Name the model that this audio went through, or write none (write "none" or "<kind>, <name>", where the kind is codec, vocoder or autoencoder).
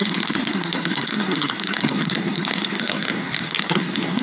codec, SNAC